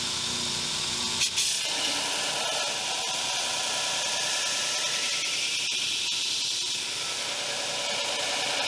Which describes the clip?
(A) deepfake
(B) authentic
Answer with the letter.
B